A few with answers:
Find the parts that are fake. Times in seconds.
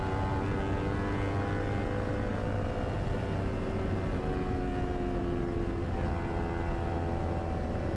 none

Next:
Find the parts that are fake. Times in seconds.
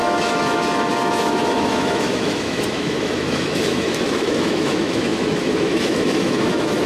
0.0-6.9 (autoencoder, DAC-VAE)